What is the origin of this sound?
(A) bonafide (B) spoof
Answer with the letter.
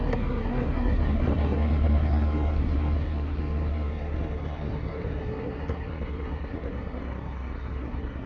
B